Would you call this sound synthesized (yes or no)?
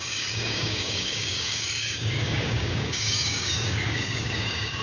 yes